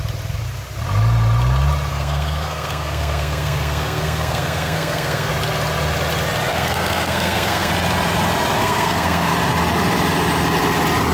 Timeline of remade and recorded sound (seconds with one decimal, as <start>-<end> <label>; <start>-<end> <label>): 0.0-1.9 recorded; 1.9-5.3 remade; 5.3-6.5 recorded; 6.5-7.7 remade; 7.7-8.6 recorded; 8.6-9.3 remade; 9.3-11.1 recorded